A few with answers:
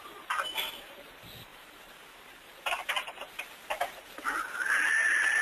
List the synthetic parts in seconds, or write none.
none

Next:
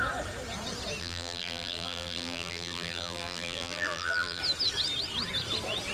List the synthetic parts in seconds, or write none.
1.0-4.4 (vocoder, BigVGAN v2)